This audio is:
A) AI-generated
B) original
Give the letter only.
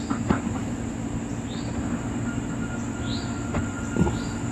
B